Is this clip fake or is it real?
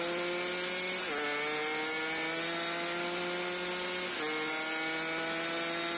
real